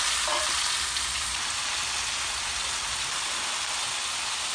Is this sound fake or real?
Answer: real